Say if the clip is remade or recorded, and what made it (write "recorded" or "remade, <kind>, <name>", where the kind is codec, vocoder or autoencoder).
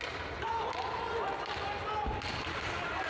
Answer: recorded